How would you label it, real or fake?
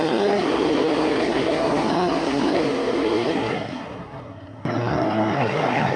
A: fake